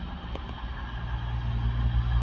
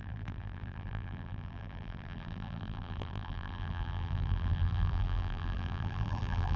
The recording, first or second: first